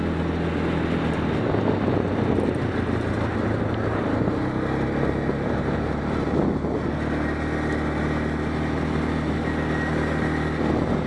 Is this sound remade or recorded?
recorded